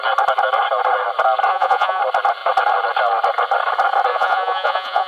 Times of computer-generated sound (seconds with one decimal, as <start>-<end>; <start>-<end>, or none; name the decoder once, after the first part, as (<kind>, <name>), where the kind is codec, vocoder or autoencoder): 1.5-2.0 (vocoder, Vocos); 4.1-5.1